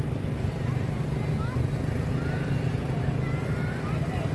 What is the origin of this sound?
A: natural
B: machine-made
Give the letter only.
A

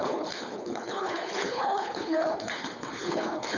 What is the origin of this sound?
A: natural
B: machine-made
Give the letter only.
B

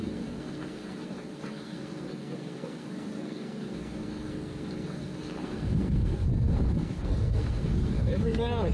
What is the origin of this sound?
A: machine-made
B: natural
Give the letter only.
A